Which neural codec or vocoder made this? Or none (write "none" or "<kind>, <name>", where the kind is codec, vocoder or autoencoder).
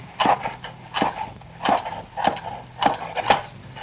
none